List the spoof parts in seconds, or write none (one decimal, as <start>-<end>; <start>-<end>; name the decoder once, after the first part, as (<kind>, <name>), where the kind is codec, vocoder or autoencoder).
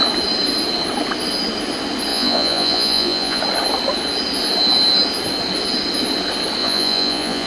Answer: 2.1-3.4 (vocoder, Vocos); 6.6-7.5